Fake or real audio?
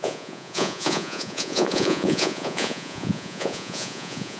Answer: fake